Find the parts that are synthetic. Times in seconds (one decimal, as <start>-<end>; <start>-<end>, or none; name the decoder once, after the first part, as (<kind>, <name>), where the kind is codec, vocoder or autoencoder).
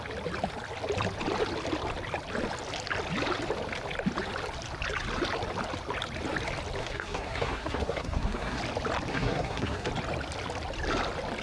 6.8-8.6 (codec, SNAC); 9.1-9.9